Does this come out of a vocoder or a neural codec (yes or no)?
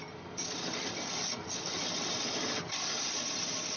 no